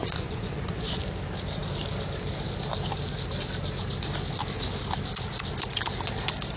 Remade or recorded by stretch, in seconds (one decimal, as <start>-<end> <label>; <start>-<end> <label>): 0.0-1.0 remade; 1.0-6.6 recorded